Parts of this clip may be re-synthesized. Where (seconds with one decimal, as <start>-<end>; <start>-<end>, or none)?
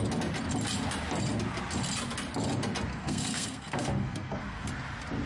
2.9-4.7